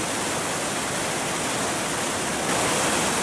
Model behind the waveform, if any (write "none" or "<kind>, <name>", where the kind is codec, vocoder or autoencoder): none